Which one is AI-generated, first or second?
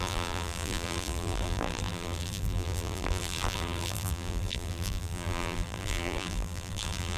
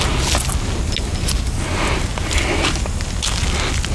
first